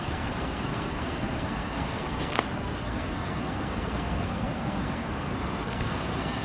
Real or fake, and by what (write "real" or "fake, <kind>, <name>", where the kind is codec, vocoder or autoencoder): fake, codec, SNAC